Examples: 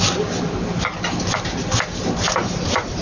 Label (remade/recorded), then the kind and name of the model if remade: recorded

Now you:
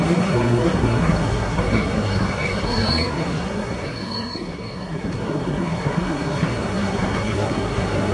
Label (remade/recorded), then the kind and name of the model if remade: remade, codec, SNAC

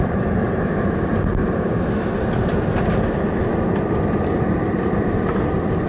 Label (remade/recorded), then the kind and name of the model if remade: recorded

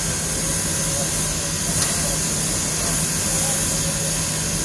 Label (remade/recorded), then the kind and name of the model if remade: recorded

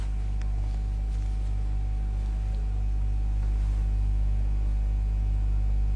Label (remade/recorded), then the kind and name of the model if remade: recorded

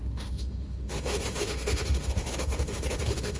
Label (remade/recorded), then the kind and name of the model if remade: remade, autoencoder, DAC-VAE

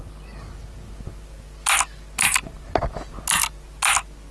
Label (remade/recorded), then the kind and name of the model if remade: recorded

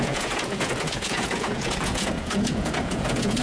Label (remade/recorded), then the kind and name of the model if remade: remade, vocoder, Vocos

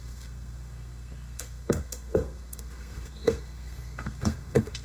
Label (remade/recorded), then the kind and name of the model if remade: remade, codec, SNAC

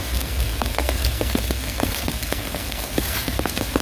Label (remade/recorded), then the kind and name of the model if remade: remade, codec, SNAC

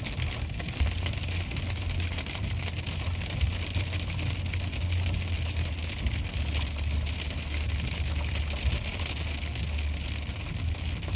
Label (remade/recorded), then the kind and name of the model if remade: recorded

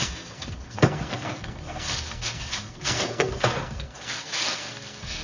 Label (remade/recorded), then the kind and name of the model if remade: remade, codec, SNAC